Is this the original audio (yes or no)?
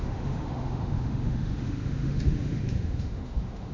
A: no